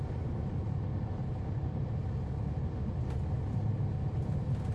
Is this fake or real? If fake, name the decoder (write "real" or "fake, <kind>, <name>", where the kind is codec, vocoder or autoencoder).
real